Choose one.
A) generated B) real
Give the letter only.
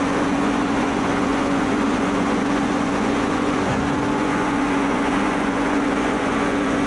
A